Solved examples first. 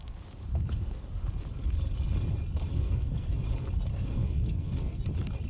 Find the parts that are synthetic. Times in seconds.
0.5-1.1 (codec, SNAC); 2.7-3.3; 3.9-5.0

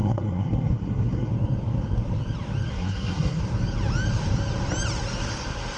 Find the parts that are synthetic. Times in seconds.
0.0-1.3 (codec, SNAC); 2.7-3.4

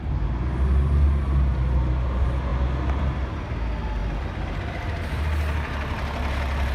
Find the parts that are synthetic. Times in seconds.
4.0-5.2 (vocoder, BigVGAN v2)

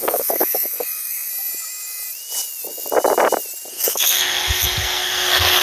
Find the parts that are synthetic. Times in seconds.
0.0-1.3 (codec, SNAC); 3.7-5.6

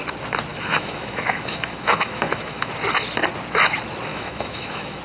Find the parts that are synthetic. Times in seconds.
0.5-2.7 (autoencoder, DAC-VAE); 4.1-5.0

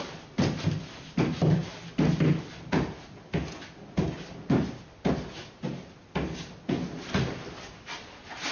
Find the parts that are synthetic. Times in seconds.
none